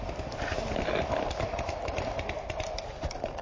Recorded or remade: recorded